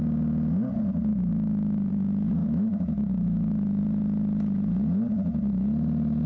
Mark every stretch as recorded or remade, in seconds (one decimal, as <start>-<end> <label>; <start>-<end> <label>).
0.0-1.1 recorded; 1.1-1.9 remade; 1.9-2.4 recorded; 2.4-3.8 remade; 3.8-6.3 recorded